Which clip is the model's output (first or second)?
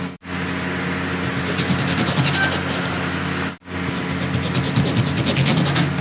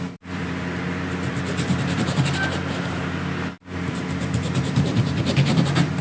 second